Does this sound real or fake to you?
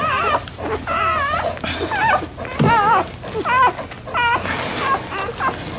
real